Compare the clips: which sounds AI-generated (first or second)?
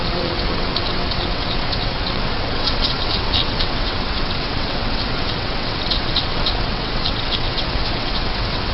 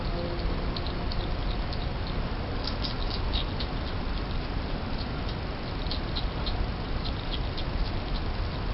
first